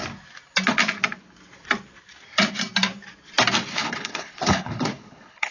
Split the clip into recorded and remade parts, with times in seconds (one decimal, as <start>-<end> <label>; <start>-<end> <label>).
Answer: 0.0-3.7 recorded; 3.7-5.5 remade